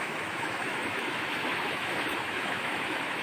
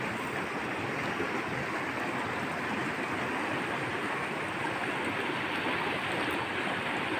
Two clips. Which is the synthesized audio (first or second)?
first